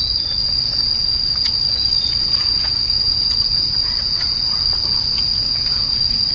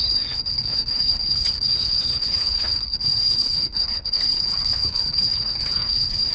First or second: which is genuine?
first